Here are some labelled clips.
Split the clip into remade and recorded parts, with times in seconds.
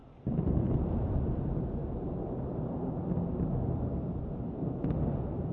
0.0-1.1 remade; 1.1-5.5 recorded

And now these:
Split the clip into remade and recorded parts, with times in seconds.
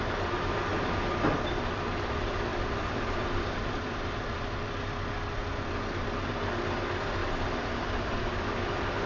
0.0-2.5 recorded; 2.5-4.8 remade; 4.8-7.2 recorded; 7.2-8.2 remade; 8.2-9.1 recorded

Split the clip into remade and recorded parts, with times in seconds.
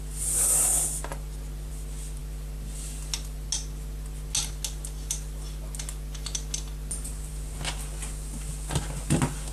0.0-9.5 recorded